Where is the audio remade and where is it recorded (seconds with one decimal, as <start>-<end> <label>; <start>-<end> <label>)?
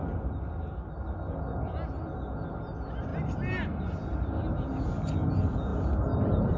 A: 0.0-3.1 recorded; 3.1-3.9 remade; 3.9-5.7 recorded; 5.7-6.6 remade